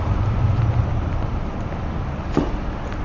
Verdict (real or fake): real